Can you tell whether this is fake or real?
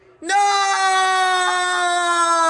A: real